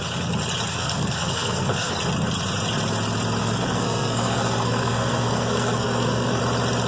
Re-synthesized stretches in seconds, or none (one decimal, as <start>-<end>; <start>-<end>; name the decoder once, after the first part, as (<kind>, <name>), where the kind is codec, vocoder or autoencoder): 0.7-1.9 (codec, SNAC); 3.4-6.4

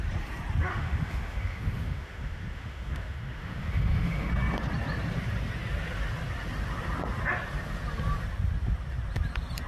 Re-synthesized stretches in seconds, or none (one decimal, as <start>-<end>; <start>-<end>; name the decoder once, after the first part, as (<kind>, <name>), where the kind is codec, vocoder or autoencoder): 0.7-4.3 (autoencoder, DAC-VAE)